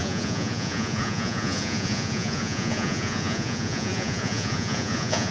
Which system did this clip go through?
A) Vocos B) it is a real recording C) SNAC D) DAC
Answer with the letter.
A